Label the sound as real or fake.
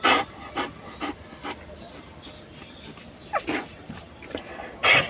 real